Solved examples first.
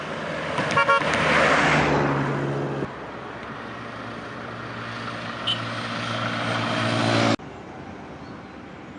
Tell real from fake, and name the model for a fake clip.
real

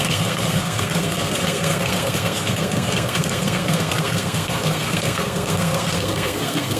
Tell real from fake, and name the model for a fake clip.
fake, codec, SNAC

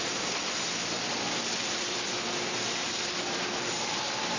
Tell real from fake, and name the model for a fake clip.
real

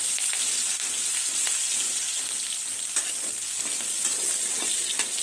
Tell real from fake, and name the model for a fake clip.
real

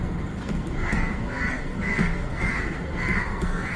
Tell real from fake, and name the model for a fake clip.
fake, codec, SNAC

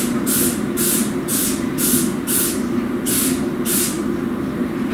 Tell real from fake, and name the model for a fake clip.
real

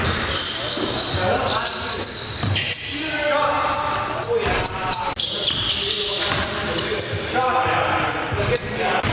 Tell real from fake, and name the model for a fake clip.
real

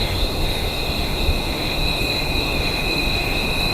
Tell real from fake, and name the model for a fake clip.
fake, autoencoder, DAC-VAE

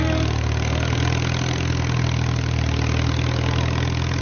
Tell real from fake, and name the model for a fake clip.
real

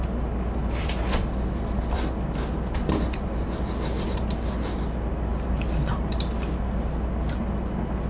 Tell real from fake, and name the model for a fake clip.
real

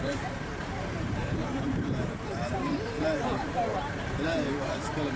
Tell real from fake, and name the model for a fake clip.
fake, vocoder, BigVGAN v2